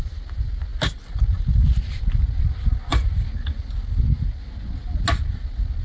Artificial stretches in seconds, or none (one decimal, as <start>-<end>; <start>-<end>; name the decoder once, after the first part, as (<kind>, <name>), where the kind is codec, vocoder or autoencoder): none